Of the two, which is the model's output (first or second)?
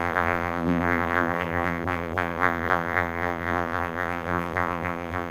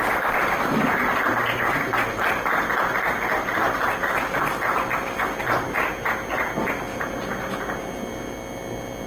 first